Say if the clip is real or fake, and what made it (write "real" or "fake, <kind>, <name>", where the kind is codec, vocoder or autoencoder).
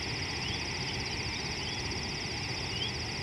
real